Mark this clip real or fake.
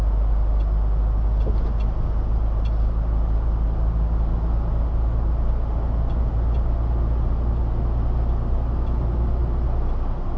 real